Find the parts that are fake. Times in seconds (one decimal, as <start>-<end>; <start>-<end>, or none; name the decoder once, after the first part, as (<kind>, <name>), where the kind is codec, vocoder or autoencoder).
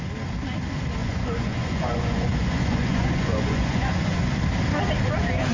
1.0-4.3 (vocoder, Vocos)